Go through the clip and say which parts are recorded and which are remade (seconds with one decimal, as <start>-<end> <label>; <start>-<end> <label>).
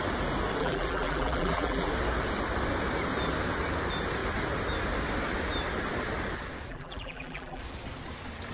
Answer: 0.0-0.6 recorded; 0.6-1.9 remade; 1.9-6.7 recorded; 6.7-7.6 remade; 7.6-8.5 recorded